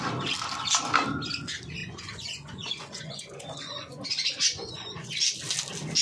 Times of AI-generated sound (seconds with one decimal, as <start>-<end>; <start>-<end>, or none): 1.8-5.2